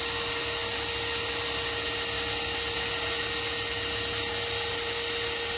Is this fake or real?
real